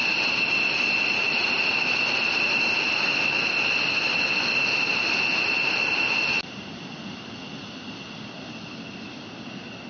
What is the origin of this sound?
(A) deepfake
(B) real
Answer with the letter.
B